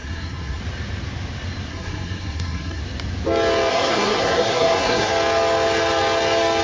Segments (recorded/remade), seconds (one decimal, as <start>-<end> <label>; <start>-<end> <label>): 0.0-0.6 remade; 0.6-1.7 recorded; 1.7-2.8 remade; 2.8-3.7 recorded; 3.7-5.1 remade; 5.1-6.6 recorded